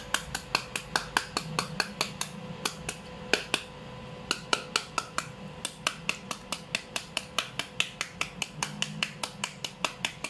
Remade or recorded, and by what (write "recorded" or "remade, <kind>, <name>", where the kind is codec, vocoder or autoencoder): recorded